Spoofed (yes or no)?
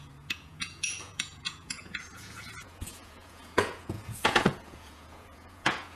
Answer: yes